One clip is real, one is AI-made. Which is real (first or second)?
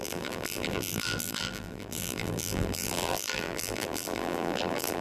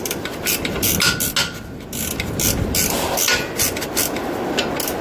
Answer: second